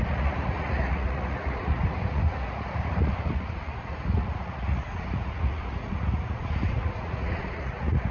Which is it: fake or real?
fake